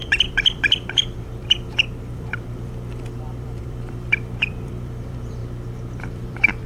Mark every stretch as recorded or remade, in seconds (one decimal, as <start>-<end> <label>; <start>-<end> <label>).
0.0-5.4 remade; 5.4-6.0 recorded; 6.0-6.7 remade